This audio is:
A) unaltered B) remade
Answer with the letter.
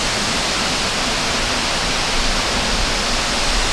A